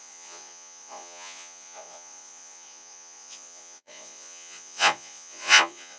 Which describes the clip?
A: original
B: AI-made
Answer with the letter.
B